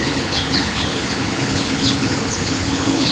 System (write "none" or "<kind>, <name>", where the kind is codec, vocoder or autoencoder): codec, HILCodec